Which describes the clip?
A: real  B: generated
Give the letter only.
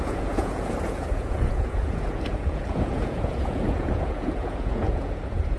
B